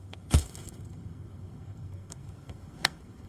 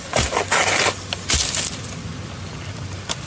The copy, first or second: first